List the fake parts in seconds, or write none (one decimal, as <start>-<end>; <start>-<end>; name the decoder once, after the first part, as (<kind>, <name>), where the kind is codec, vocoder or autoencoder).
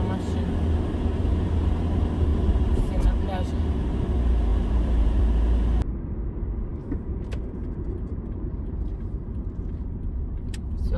2.3-3.7 (vocoder, BigVGAN v2); 4.5-5.2; 6.7-10.5